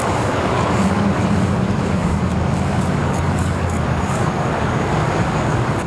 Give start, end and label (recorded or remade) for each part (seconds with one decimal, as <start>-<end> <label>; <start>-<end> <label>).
0.0-5.9 remade